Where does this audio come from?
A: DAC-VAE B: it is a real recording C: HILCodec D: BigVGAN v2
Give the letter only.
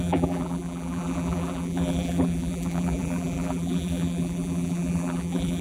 D